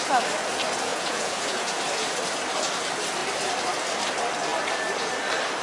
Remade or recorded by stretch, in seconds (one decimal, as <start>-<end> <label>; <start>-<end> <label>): 0.0-0.9 recorded; 0.9-1.8 remade; 1.8-5.6 recorded